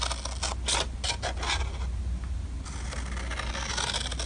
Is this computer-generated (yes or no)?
no